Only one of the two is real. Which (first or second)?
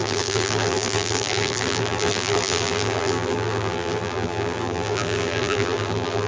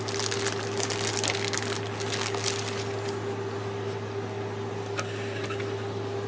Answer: second